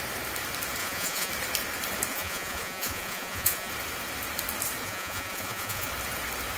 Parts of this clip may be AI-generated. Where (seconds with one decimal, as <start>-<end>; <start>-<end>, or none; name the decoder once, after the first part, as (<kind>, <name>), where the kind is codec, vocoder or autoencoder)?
0.8-1.3 (vocoder, Vocos); 2.1-3.7; 4.8-5.9